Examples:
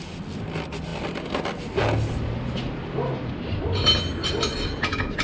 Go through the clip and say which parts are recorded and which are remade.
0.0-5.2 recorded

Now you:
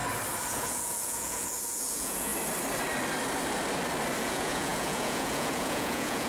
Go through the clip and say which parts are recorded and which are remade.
0.0-0.5 recorded; 0.5-2.3 remade; 2.3-4.2 recorded; 4.2-6.3 remade